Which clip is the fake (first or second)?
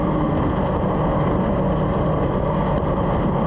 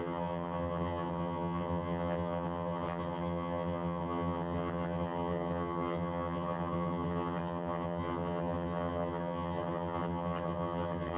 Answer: second